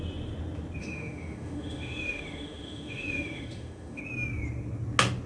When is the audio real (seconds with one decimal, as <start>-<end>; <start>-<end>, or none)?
0.0-0.8; 4.0-5.3